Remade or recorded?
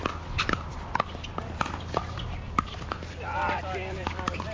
recorded